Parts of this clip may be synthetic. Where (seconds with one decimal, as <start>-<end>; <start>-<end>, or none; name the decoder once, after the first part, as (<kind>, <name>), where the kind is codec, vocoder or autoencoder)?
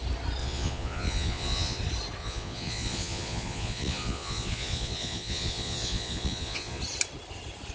0.4-1.8 (vocoder, Vocos); 2.2-6.8